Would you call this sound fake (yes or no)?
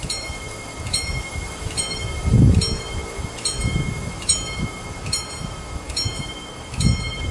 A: yes